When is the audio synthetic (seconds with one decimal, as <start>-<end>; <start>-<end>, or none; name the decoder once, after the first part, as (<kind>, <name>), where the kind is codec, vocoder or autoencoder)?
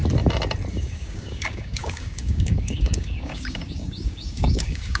0.7-5.0 (codec, DAC)